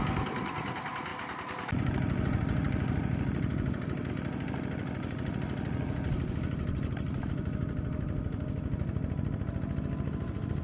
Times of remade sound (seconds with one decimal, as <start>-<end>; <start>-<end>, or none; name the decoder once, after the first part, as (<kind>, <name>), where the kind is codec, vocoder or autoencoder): 1.1-4.1 (vocoder, BigVGAN v2)